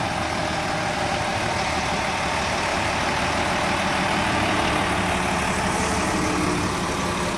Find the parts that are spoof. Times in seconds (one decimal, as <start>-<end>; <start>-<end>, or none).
none